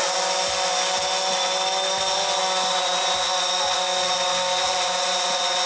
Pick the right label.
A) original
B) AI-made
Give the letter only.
A